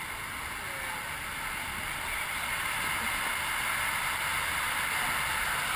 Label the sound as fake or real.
real